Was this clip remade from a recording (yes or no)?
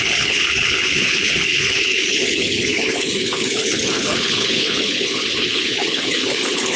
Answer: yes